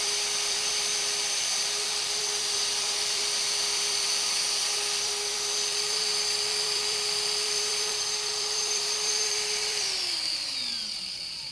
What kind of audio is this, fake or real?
fake